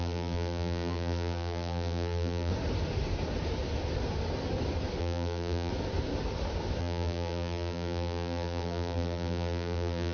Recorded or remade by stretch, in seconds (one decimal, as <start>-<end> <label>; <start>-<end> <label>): 0.0-2.5 remade; 2.5-5.0 recorded; 5.0-5.7 remade; 5.7-6.8 recorded; 6.8-10.1 remade